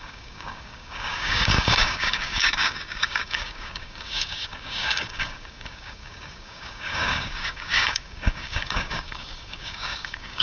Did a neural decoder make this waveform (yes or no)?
yes